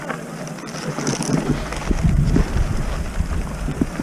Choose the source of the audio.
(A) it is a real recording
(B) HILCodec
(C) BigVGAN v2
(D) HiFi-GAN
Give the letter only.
A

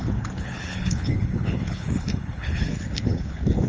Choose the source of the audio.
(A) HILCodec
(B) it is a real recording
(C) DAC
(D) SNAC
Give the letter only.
A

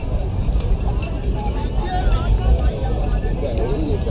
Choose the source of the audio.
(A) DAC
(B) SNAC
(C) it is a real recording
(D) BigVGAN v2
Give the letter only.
D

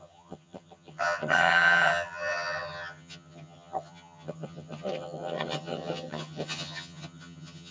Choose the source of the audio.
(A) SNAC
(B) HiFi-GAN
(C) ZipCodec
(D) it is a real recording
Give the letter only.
B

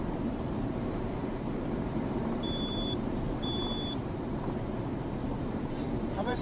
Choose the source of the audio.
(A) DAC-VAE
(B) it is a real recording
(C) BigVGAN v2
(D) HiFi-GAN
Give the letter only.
C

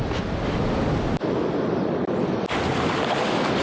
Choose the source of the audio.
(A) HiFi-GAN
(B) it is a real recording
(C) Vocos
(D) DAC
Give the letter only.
B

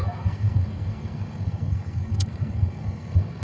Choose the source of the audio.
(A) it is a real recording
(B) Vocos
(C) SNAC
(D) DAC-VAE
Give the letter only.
C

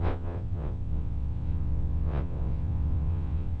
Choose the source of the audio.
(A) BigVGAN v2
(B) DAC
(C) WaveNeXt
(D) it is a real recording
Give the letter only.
C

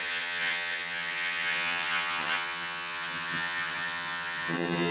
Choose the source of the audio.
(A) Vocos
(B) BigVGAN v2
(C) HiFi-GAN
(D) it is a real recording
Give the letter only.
C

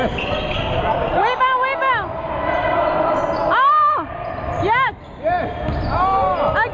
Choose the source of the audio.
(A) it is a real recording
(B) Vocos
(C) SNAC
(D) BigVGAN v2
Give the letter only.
A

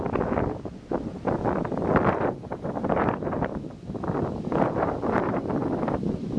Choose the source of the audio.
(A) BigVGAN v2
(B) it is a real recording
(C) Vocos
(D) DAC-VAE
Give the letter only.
B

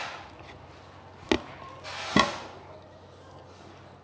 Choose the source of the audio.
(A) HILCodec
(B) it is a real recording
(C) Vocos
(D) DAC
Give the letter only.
B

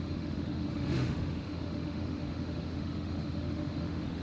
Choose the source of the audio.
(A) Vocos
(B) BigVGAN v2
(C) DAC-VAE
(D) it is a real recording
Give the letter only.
C